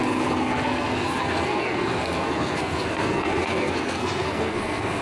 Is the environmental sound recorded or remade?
remade